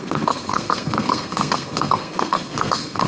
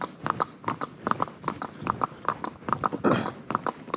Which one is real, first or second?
second